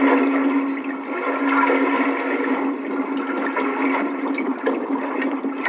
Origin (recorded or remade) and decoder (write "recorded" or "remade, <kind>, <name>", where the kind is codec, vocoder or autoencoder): recorded